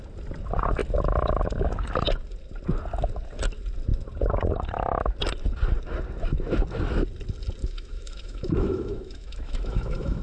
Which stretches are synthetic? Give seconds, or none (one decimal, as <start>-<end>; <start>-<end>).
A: 7.6-10.2